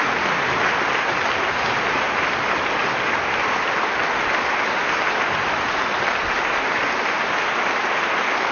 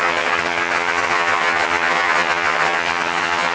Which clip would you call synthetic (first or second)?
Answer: second